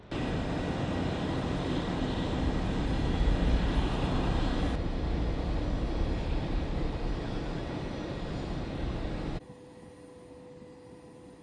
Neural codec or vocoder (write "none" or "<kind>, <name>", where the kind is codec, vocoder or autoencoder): none